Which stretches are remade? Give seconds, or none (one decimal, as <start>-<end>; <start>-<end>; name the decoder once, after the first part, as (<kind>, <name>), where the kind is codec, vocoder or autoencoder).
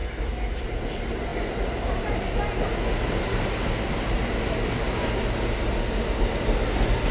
0.0-0.6 (autoencoder, DAC-VAE)